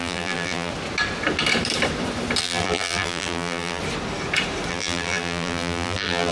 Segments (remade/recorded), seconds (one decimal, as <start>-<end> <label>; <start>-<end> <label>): 0.0-0.7 remade; 0.7-2.4 recorded; 2.4-3.8 remade; 3.8-4.7 recorded; 4.7-6.3 remade